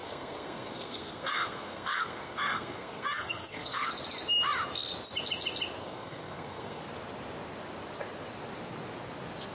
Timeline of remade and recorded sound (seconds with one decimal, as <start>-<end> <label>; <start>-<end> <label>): 0.0-3.9 remade; 3.9-5.8 recorded; 5.8-6.8 remade; 6.8-9.5 recorded